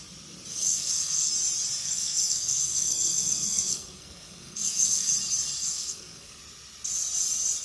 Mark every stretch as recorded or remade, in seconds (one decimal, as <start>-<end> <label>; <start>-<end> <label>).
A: 0.0-0.5 recorded; 0.5-1.3 remade; 1.3-1.8 recorded; 1.8-5.1 remade; 5.1-5.6 recorded; 5.6-6.4 remade; 6.4-7.6 recorded